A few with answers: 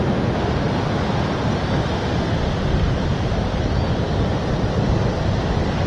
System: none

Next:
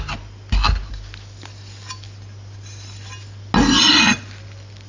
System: none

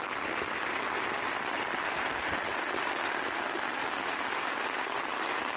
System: none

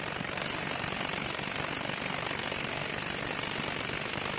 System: none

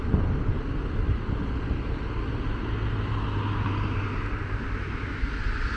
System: none